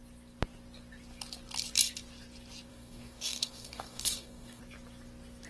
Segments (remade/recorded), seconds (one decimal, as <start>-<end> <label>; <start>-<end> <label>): 0.0-2.7 recorded; 2.7-4.6 remade; 4.6-5.5 recorded